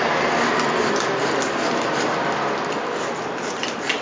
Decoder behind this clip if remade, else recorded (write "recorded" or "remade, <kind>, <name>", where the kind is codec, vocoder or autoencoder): remade, vocoder, BigVGAN v2